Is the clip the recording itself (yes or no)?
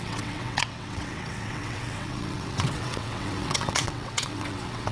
no